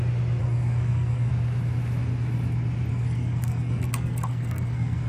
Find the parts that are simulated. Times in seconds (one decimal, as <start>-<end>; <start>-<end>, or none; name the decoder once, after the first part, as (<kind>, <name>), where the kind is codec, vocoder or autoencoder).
0.4-1.3 (codec, SNAC); 2.9-5.1